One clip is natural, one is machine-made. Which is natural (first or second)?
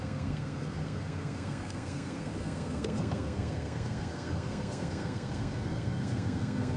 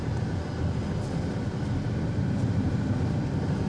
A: second